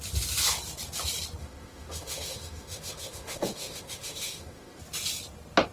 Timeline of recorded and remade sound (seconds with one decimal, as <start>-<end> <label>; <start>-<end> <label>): 0.0-1.4 recorded; 1.4-4.8 remade; 4.8-5.7 recorded